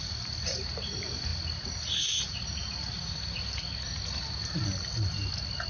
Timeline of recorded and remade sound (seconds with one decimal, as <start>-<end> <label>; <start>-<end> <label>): 0.0-5.7 recorded